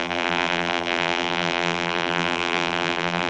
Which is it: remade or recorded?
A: remade